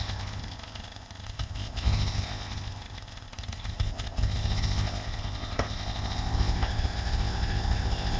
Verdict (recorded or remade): remade